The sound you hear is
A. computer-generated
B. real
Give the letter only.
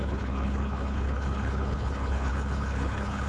A